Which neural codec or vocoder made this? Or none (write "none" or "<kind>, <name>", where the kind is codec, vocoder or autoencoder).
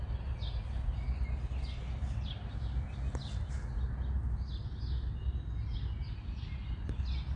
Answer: none